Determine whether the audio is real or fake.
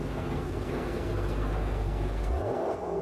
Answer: fake